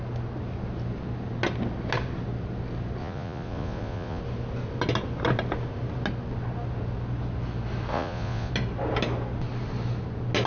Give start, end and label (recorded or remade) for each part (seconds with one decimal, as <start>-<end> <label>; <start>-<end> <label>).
0.0-3.0 recorded; 3.0-4.2 remade; 4.2-7.9 recorded; 7.9-8.5 remade; 8.5-10.5 recorded